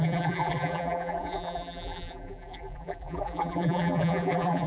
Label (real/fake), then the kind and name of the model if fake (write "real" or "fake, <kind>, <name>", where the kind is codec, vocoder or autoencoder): fake, vocoder, BigVGAN v2